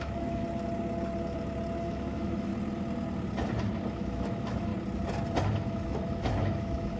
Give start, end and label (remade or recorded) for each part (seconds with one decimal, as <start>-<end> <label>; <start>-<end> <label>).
0.0-0.4 remade; 0.4-1.8 recorded; 1.8-2.5 remade; 2.5-3.9 recorded; 3.9-4.7 remade; 4.7-5.4 recorded; 5.4-7.0 remade

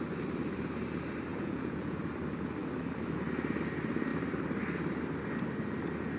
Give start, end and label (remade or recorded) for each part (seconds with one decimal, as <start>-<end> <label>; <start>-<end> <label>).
0.0-1.3 recorded; 1.3-2.0 remade; 2.0-6.2 recorded

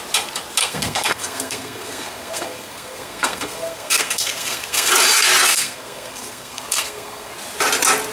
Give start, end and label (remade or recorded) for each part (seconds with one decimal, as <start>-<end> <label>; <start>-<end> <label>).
0.0-0.6 recorded; 0.6-4.9 remade; 4.9-5.5 recorded; 5.5-7.3 remade; 7.3-8.1 recorded

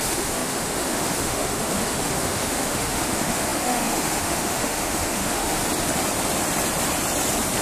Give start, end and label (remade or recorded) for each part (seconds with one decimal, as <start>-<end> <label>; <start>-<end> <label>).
0.0-5.6 remade; 5.6-7.6 recorded

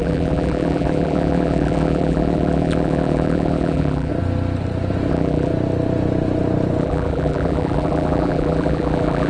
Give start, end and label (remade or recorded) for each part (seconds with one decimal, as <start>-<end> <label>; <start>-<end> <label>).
0.0-4.1 remade; 4.1-5.1 recorded; 5.1-5.5 remade; 5.5-6.8 recorded; 6.8-9.3 remade

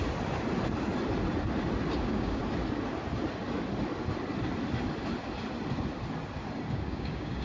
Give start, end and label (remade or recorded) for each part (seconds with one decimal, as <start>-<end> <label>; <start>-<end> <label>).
0.0-2.0 recorded; 2.0-2.4 remade; 2.4-6.7 recorded; 6.7-7.4 remade

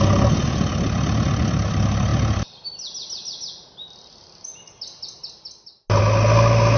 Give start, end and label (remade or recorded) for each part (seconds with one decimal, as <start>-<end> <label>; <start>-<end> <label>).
0.0-6.8 recorded